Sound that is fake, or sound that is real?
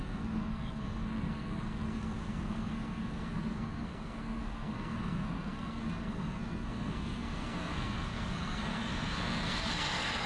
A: fake